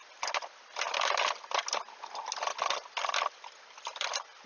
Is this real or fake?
real